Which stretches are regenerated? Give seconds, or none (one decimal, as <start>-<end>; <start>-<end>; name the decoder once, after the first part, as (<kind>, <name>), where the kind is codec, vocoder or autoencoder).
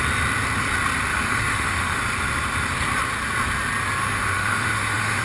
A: 1.1-2.0 (autoencoder, DAC-VAE); 4.0-5.2